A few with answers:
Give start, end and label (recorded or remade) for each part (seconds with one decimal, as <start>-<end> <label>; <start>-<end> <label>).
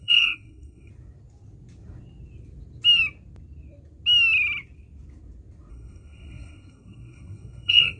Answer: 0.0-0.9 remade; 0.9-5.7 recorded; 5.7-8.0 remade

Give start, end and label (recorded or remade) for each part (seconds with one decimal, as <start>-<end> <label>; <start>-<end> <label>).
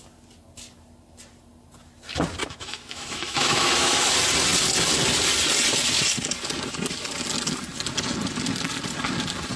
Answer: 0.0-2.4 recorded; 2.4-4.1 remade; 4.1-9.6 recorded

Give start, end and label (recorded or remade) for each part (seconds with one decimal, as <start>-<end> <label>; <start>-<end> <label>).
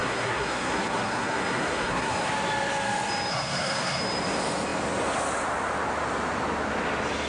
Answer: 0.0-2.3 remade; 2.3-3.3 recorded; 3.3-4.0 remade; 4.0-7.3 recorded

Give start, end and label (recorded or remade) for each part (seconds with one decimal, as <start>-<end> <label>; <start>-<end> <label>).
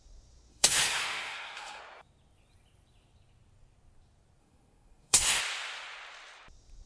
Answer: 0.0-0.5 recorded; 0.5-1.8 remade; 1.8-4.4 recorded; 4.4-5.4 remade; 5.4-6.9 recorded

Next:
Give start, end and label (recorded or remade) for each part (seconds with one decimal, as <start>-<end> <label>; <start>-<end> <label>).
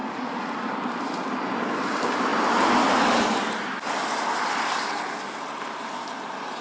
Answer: 0.0-0.7 remade; 0.7-6.6 recorded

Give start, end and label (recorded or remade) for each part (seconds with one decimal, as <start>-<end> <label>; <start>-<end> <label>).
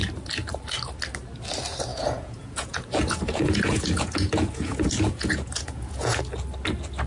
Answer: 0.0-1.9 recorded; 1.9-6.2 remade; 6.2-7.1 recorded